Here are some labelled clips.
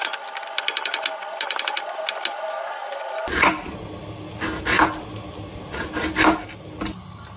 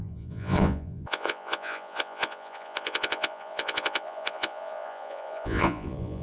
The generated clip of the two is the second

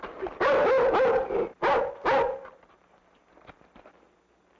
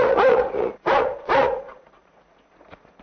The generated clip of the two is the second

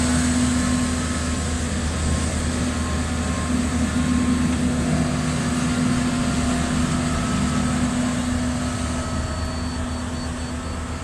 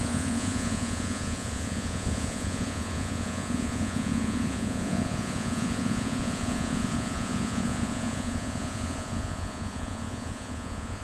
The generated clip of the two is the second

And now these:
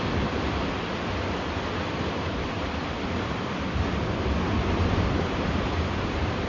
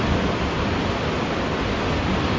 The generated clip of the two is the first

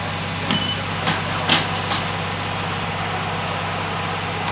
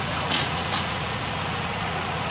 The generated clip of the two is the second